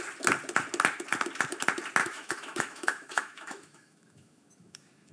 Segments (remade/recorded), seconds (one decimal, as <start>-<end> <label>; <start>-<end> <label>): 0.0-2.0 recorded; 2.0-5.1 remade

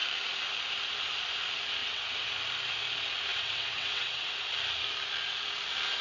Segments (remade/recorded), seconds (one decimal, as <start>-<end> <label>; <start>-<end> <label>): 0.0-1.8 recorded; 1.8-2.3 remade; 2.3-3.3 recorded; 3.3-4.3 remade; 4.3-6.0 recorded

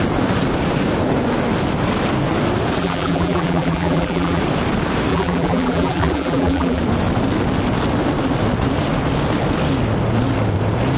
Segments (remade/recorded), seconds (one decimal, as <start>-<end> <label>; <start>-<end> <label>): 0.0-2.8 recorded; 2.8-4.4 remade; 4.4-5.1 recorded; 5.1-6.8 remade; 6.8-11.0 recorded

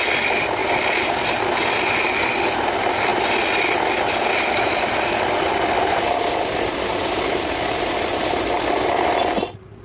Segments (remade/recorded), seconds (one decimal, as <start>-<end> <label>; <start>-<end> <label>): 0.0-9.8 recorded

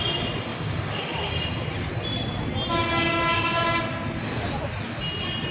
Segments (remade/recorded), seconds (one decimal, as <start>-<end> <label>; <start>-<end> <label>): 0.0-0.5 recorded; 0.5-1.3 remade; 1.3-5.5 recorded